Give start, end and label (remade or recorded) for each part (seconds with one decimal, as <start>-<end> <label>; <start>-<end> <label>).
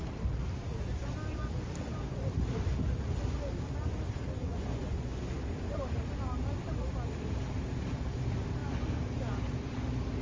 0.0-4.4 recorded; 4.4-5.2 remade; 5.2-10.2 recorded